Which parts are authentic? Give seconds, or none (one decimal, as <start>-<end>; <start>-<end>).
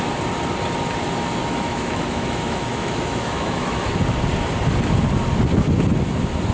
0.0-1.4; 3.9-6.5